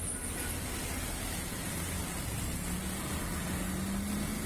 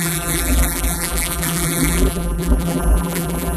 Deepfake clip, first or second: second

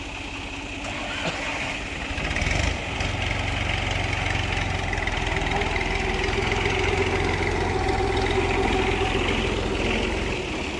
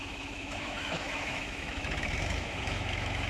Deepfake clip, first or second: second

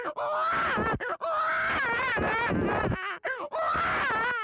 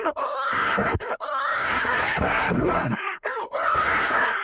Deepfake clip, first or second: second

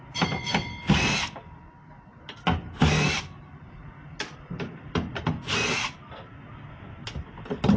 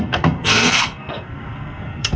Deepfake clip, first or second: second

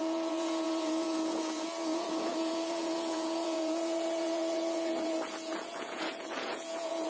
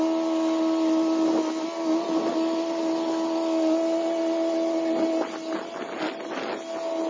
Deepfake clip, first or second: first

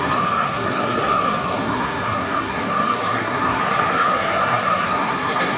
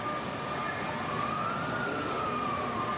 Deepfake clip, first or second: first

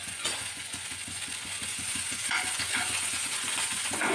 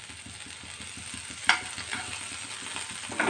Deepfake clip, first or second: first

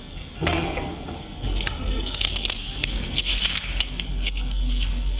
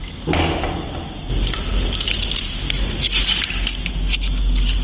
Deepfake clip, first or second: first